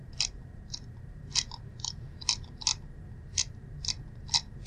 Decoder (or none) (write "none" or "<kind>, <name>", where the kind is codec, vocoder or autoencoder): none